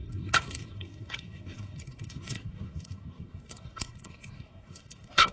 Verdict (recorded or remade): remade